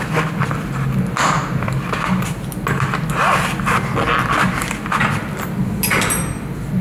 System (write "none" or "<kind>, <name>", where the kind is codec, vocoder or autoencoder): none